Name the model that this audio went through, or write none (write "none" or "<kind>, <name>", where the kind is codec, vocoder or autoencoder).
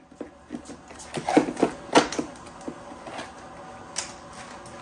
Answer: none